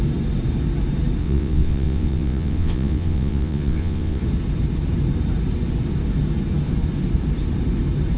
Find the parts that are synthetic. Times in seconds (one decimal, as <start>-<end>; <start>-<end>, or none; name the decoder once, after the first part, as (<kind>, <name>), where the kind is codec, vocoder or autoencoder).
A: 1.2-4.2 (vocoder, WaveNeXt)